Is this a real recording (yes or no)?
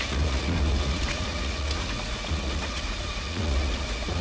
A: no